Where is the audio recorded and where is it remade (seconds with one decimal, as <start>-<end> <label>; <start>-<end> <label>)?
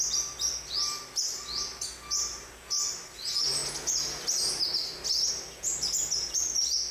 0.0-6.9 recorded